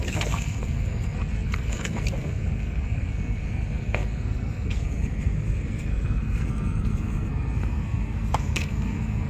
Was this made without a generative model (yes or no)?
no